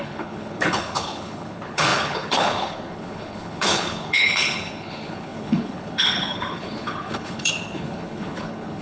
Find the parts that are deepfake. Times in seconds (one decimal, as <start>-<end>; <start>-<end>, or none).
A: 0.0-8.8